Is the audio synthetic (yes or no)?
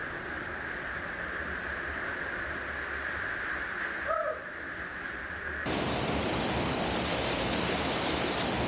no